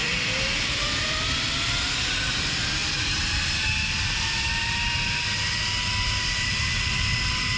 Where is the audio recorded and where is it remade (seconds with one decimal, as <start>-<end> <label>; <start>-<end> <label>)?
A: 0.0-1.0 remade; 1.0-7.6 recorded